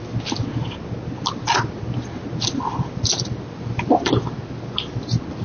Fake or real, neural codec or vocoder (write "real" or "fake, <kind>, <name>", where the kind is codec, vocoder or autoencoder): real